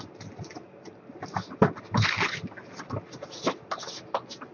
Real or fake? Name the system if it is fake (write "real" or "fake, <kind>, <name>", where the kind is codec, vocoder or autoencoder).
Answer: real